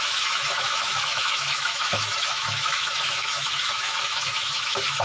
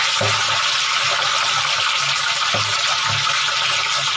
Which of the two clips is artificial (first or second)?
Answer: first